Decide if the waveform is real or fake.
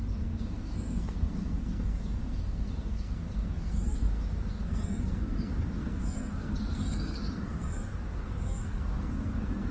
fake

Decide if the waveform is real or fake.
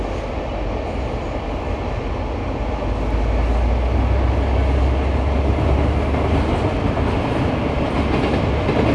real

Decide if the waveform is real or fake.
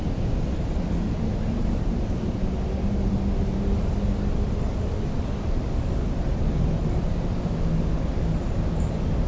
real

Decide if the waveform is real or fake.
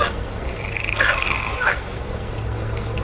fake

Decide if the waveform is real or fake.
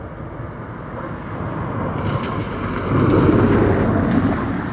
real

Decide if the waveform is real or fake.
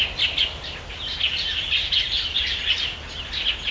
real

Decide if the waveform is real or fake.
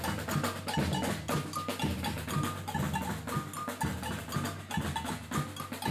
real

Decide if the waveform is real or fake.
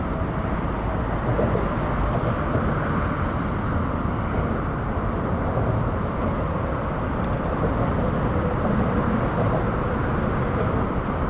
real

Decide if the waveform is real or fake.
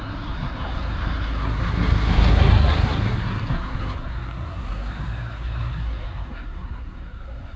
fake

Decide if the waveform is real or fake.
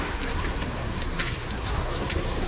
fake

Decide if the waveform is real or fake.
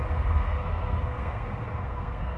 fake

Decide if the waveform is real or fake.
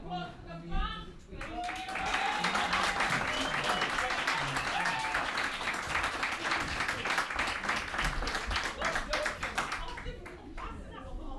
real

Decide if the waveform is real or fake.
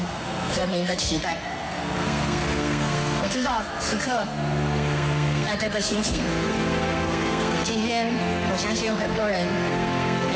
fake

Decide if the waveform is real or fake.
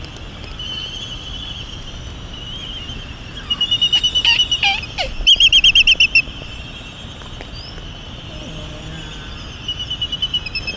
real